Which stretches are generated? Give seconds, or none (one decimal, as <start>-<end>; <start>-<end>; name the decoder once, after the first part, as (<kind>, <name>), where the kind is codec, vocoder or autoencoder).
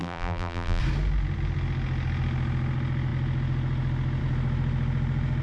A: 0.0-0.8 (vocoder, BigVGAN v2)